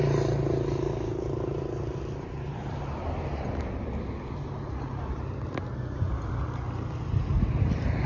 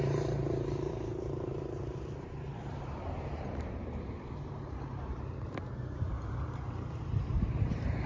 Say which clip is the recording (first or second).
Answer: first